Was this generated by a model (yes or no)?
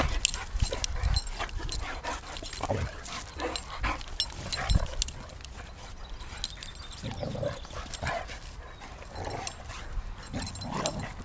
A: no